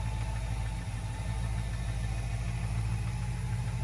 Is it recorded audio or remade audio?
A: recorded